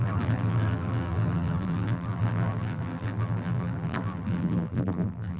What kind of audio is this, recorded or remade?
remade